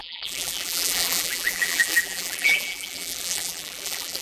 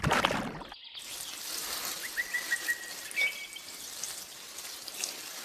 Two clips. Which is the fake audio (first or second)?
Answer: first